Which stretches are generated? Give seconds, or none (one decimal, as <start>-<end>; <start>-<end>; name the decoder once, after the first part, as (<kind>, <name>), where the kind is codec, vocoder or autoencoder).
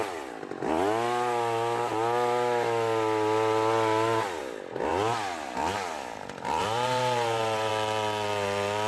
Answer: 6.6-7.7 (vocoder, BigVGAN v2)